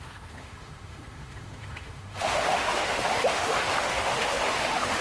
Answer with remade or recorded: remade